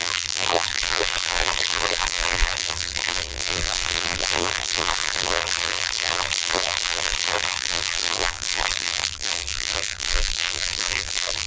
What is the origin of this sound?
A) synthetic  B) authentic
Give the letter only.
A